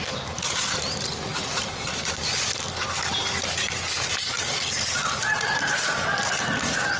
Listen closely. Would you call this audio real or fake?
real